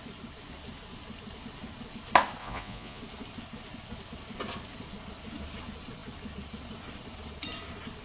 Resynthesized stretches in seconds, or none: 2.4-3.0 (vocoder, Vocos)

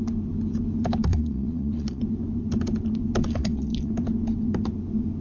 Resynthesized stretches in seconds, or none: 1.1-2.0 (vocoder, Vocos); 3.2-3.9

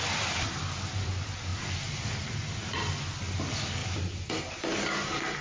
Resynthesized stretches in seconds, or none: 1.5-2.6 (vocoder, BigVGAN v2); 3.8-4.4

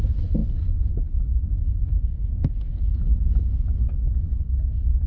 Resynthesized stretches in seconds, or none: none

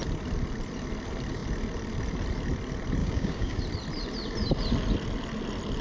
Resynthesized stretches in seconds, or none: 3.0-3.6 (codec, DAC)

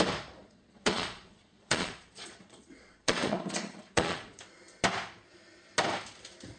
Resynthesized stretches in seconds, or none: 0.4-4.4 (vocoder, Vocos)

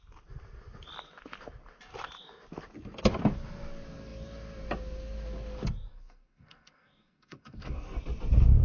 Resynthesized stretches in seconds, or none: 5.9-8.0 (codec, SNAC)